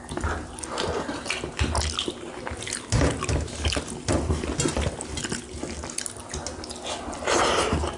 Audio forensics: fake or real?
real